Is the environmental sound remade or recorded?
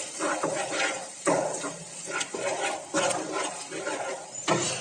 remade